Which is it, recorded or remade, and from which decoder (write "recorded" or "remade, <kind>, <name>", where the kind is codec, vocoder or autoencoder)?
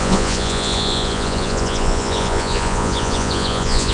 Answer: remade, vocoder, Vocos